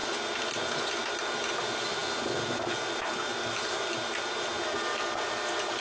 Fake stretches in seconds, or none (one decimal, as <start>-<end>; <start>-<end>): none